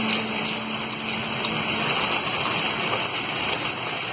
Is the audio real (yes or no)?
yes